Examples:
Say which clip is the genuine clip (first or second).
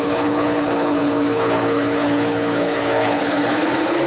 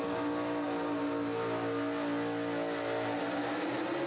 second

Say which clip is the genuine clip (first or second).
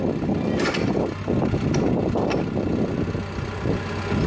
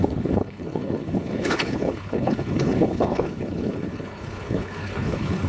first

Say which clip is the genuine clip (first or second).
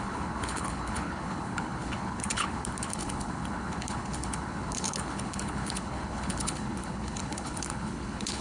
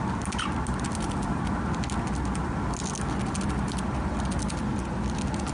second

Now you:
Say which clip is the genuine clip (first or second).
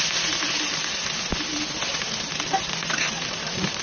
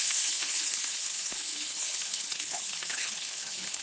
first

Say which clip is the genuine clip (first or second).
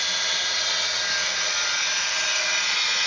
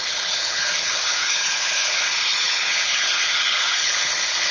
first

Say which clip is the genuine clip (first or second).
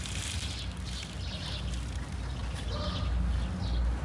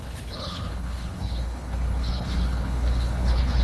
first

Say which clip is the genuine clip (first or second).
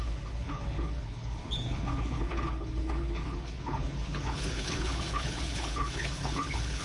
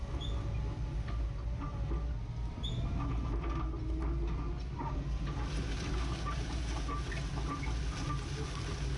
second